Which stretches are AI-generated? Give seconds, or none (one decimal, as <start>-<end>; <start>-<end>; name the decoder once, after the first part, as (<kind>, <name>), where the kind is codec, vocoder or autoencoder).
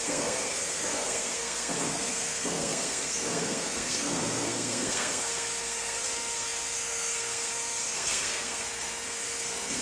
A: 0.0-9.8 (codec, SNAC)